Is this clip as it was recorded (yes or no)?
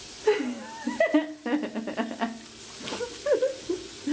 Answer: yes